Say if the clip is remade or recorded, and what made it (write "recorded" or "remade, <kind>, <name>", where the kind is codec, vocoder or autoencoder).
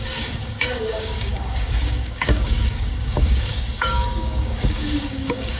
remade, codec, DAC